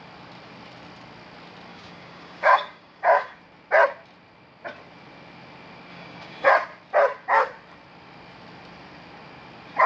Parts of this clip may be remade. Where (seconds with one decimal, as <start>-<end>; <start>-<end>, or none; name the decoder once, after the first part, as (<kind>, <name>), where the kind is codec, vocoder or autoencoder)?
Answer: 1.7-3.4 (codec, DAC); 5.9-6.5